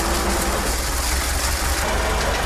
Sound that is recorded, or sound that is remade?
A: recorded